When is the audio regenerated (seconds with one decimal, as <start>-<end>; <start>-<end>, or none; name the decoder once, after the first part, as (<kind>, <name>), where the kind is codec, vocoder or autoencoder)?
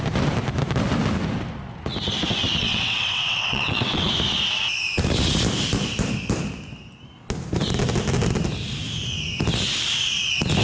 2.6-4.1 (vocoder, WaveNeXt)